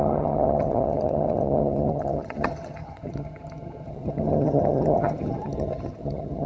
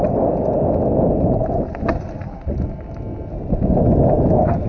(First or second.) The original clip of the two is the second